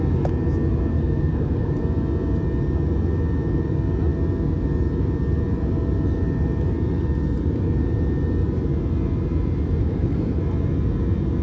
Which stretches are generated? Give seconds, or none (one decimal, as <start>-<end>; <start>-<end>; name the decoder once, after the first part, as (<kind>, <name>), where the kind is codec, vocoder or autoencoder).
0.9-1.8 (codec, SNAC); 9.8-10.4